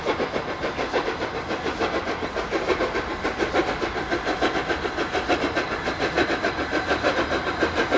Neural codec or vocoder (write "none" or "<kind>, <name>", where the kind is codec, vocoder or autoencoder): none